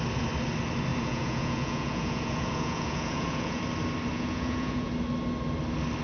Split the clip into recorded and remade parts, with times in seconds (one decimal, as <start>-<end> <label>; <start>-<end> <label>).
0.0-0.9 recorded; 0.9-3.6 remade; 3.6-4.1 recorded; 4.1-4.9 remade; 4.9-6.0 recorded